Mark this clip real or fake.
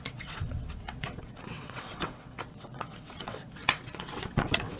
fake